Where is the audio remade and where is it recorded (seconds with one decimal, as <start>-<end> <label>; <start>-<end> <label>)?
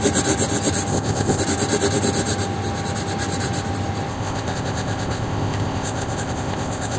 0.0-0.9 recorded; 0.9-1.4 remade; 1.4-4.1 recorded; 4.1-7.0 remade